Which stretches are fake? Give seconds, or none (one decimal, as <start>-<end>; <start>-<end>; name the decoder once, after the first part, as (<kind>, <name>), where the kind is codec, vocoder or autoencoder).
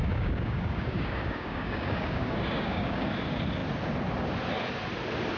0.0-3.1 (codec, DAC)